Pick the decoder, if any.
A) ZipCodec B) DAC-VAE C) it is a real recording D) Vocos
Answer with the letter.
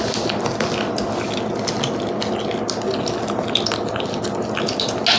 C